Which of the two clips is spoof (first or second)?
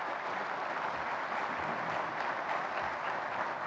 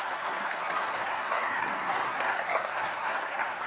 second